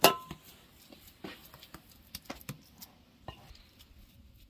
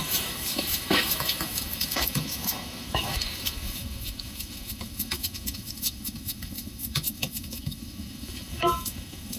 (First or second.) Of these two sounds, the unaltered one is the first